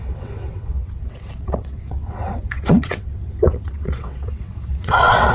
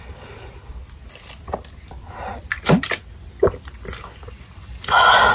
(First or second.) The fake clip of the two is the first